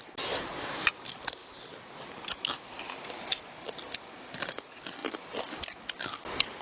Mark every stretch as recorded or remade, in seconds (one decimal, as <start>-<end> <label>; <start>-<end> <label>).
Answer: 0.0-6.6 recorded